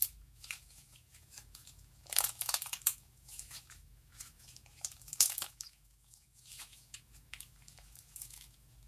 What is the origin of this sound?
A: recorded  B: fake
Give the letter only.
B